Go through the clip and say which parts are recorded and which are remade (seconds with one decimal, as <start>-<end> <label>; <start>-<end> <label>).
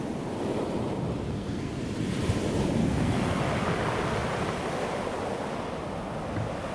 0.0-1.3 recorded; 1.3-1.8 remade; 1.8-2.8 recorded; 2.8-3.4 remade; 3.4-6.7 recorded